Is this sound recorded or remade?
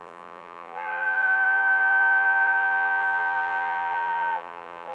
remade